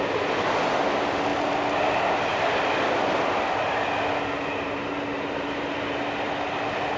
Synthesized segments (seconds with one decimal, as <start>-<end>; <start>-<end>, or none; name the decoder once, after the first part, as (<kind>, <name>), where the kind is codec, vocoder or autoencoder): none